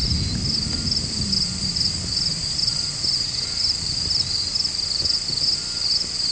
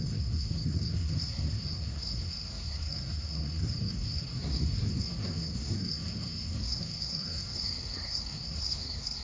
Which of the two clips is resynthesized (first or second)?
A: second